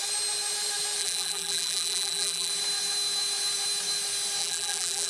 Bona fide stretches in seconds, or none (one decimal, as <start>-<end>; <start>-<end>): 0.0-1.0; 2.5-4.4